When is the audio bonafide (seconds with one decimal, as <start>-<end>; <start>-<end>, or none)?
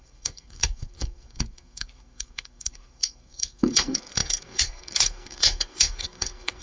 none